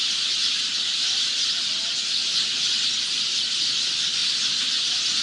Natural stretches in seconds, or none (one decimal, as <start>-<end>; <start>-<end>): 1.2-4.2; 4.7-5.2